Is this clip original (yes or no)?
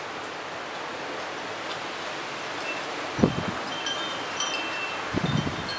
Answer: yes